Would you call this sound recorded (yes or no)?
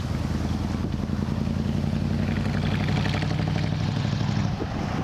yes